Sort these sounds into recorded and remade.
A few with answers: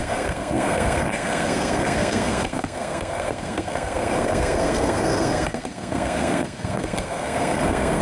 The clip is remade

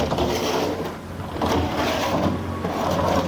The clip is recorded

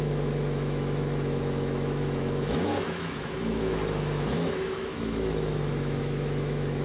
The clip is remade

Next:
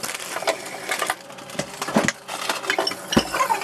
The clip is recorded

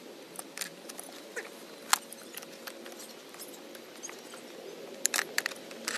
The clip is recorded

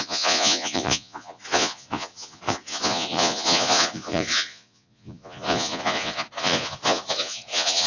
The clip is remade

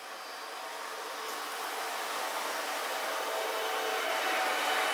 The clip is recorded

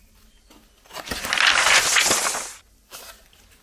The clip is recorded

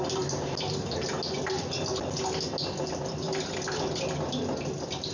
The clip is recorded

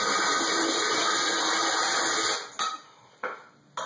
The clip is recorded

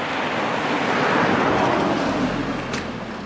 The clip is recorded